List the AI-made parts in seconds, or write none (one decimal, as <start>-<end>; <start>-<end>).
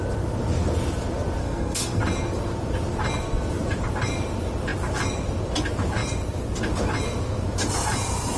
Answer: 1.4-2.0